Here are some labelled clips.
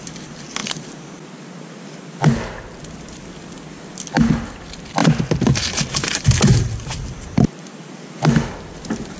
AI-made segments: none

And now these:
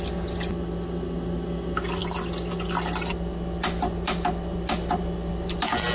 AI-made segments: none

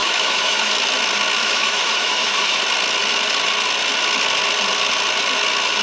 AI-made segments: 0.0-0.7 (autoencoder, DAC-VAE); 1.4-2.6

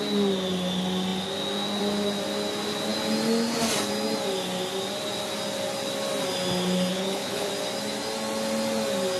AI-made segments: 6.9-7.5 (codec, HILCodec)

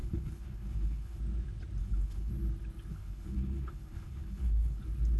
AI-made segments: 0.0-1.2 (codec, HILCodec); 1.8-2.3; 2.9-4.8

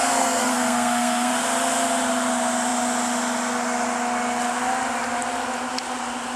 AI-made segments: 0.0-1.3 (codec, SNAC)

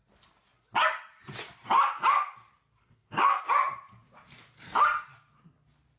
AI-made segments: 2.8-3.4 (codec, SNAC)

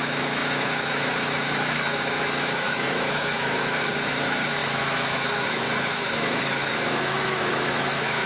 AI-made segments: 0.0-8.3 (autoencoder, DAC-VAE)